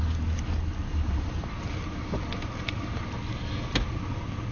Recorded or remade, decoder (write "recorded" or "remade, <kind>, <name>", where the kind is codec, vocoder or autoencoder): recorded